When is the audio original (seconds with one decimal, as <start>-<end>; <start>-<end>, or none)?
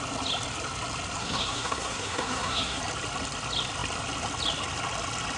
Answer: 0.0-1.2; 2.8-5.4